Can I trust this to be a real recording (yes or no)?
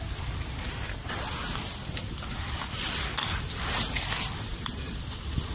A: yes